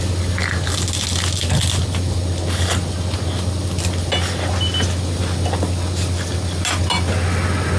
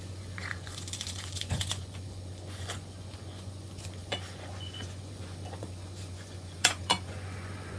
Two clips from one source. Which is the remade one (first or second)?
second